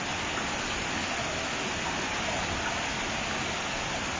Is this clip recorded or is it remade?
recorded